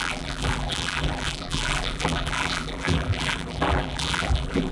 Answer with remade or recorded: remade